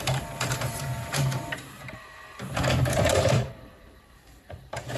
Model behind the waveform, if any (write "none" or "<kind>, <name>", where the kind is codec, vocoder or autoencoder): vocoder, BigVGAN v2